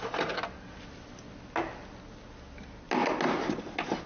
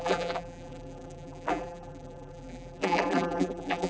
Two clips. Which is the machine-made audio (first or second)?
second